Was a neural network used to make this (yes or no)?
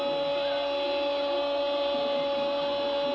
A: no